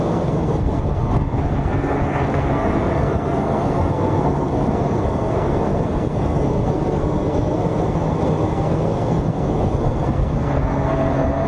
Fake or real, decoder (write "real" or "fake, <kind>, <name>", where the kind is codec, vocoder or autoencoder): fake, codec, SNAC